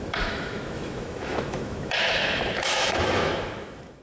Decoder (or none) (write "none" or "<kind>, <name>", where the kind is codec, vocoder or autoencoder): autoencoder, DAC-VAE